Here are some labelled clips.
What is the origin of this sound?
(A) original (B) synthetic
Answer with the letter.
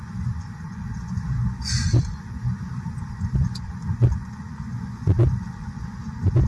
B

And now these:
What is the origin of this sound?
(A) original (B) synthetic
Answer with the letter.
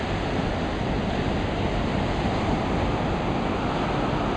A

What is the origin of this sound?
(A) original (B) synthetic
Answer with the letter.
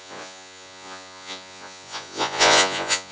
B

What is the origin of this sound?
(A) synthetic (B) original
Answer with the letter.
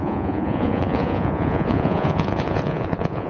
A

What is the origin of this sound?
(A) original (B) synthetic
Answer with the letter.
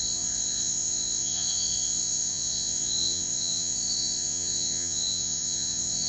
B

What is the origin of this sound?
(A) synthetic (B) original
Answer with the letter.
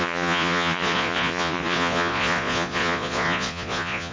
A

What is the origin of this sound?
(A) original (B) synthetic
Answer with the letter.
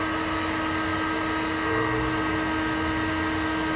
A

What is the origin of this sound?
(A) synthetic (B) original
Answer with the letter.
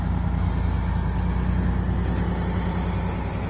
B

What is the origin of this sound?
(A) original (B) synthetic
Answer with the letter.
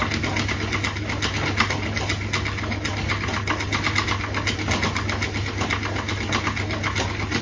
A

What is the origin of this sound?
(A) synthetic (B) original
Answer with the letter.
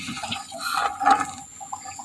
A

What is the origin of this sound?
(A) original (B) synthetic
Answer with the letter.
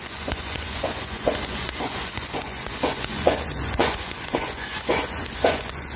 B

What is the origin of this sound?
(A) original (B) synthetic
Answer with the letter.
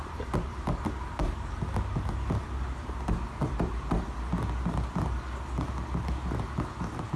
A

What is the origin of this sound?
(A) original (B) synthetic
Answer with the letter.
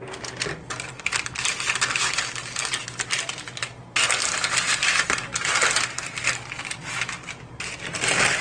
A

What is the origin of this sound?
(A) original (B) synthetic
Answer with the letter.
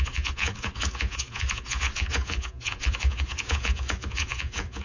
B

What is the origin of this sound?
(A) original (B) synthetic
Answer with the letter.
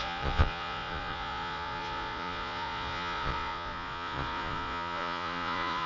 B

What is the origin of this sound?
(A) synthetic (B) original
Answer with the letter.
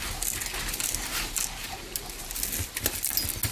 B